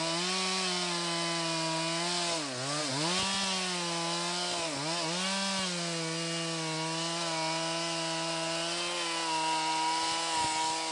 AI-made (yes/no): no